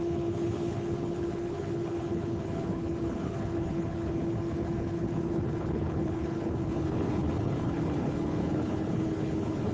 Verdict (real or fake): fake